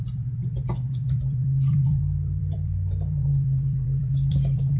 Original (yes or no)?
no